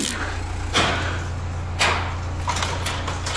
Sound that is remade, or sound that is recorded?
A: recorded